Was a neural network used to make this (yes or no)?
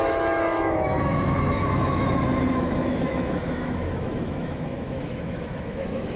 yes